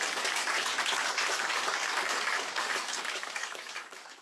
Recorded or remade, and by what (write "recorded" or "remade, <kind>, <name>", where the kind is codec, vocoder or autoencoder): remade, codec, DAC